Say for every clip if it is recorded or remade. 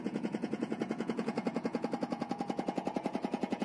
remade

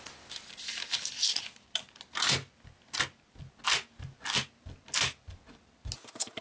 recorded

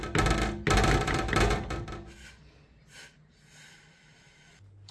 recorded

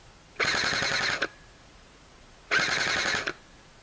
remade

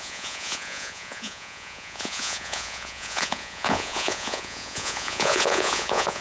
remade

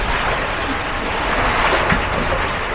recorded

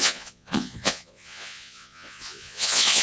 remade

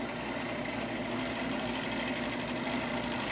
recorded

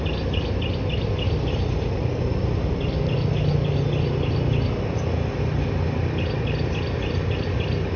recorded